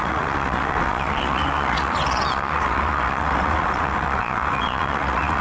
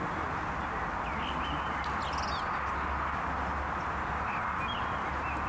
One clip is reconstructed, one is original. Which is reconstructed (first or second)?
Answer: first